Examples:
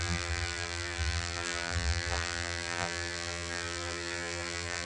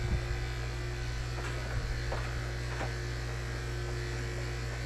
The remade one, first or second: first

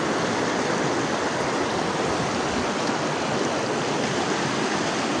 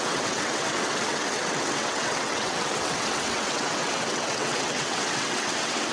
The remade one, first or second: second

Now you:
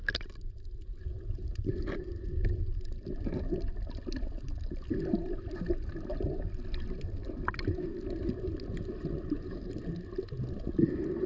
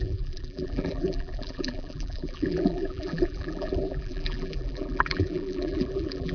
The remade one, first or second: second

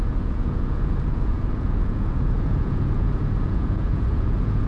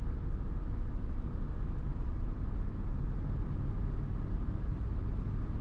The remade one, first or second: first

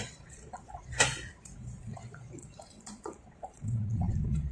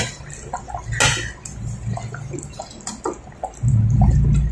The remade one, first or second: first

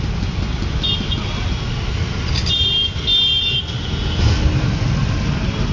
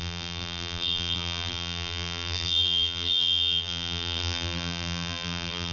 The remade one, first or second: second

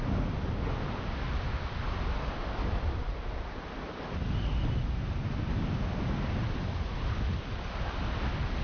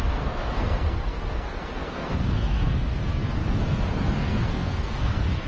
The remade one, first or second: second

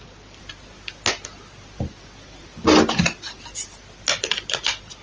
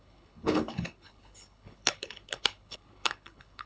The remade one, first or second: second